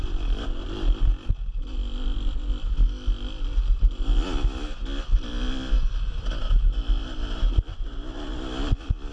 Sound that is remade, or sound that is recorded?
recorded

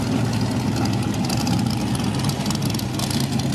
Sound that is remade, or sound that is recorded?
recorded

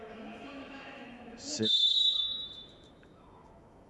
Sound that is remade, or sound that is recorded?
remade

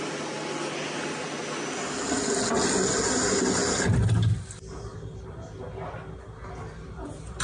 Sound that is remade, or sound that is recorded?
recorded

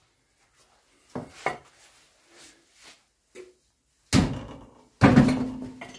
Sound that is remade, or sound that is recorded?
recorded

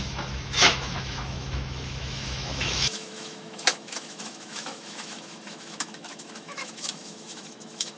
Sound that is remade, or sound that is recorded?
remade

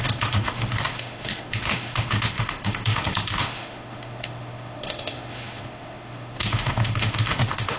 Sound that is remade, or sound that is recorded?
remade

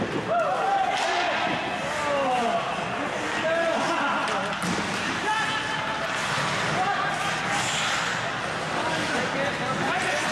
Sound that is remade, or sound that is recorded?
recorded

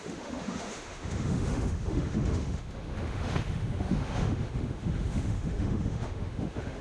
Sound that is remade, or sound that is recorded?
remade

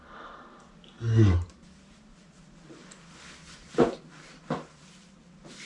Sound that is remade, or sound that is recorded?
recorded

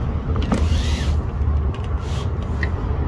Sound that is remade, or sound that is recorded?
recorded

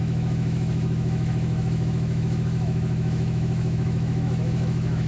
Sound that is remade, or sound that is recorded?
remade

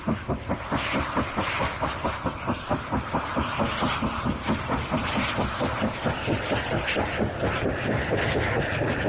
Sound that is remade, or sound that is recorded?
recorded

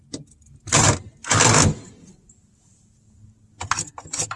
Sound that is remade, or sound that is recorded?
recorded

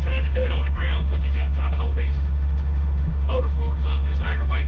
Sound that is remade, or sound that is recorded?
remade